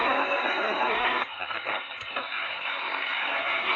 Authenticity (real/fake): fake